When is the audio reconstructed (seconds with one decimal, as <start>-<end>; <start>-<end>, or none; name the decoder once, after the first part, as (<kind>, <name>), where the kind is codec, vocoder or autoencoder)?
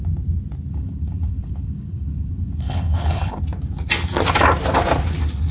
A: 0.7-3.4 (codec, HILCodec)